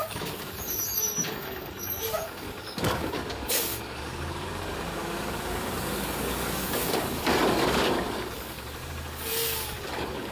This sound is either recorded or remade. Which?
remade